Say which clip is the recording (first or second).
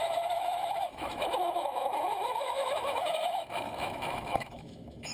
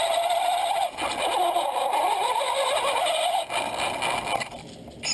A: second